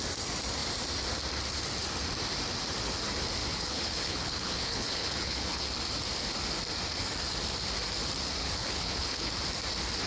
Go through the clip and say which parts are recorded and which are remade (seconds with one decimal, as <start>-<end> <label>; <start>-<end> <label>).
0.0-3.4 recorded; 3.4-5.6 remade; 5.6-8.4 recorded; 8.4-9.3 remade; 9.3-10.1 recorded